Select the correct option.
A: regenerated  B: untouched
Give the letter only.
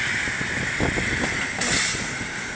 B